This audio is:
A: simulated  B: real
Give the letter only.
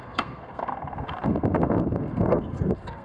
A